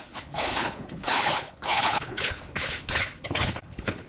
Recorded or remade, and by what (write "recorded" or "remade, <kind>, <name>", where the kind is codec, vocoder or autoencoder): remade, codec, HILCodec